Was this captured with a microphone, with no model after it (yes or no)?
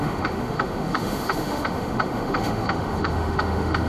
no